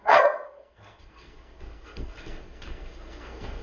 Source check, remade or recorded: remade